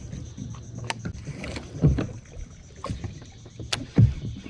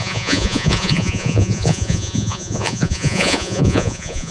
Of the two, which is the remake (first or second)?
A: second